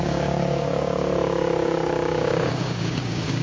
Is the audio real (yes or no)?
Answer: no